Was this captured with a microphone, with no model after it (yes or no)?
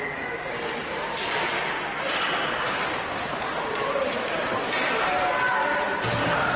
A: yes